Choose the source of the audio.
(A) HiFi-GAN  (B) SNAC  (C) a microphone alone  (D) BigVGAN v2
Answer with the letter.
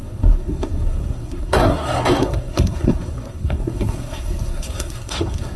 B